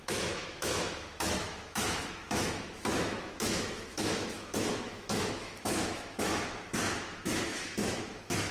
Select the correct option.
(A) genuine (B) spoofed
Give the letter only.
B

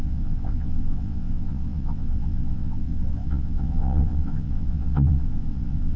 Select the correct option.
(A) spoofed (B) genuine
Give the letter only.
A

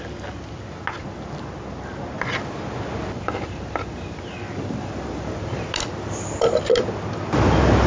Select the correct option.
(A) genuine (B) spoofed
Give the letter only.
A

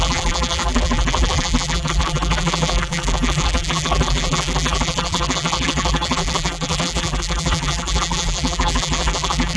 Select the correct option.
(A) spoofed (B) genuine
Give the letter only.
A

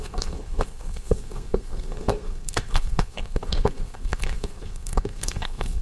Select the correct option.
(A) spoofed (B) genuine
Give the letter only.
A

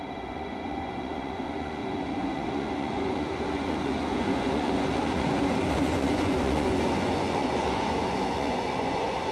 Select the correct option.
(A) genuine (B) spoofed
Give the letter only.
B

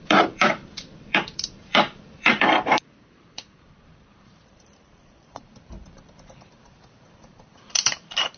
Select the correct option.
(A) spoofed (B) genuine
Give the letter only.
A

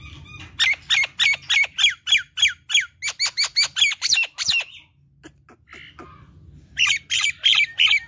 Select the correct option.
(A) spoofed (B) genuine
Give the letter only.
B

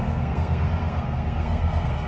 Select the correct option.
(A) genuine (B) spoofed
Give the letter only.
B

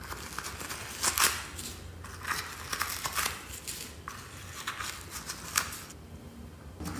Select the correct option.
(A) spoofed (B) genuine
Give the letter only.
B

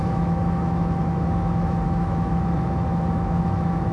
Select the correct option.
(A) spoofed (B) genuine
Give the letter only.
A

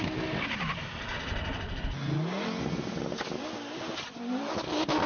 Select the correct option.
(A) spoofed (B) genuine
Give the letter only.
B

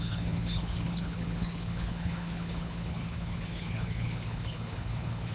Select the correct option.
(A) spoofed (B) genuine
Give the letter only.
A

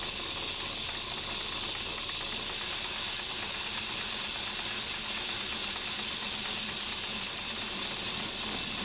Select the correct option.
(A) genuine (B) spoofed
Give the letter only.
A